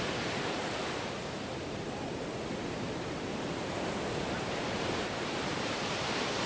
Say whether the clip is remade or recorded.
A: remade